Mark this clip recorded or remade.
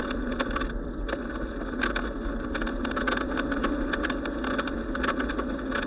recorded